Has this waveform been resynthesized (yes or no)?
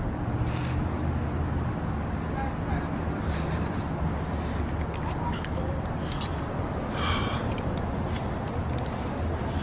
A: no